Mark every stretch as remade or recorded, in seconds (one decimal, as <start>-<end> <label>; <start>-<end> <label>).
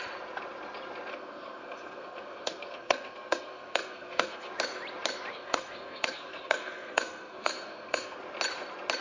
0.0-1.1 recorded; 1.1-4.5 remade; 4.5-5.3 recorded; 5.3-8.2 remade; 8.2-9.0 recorded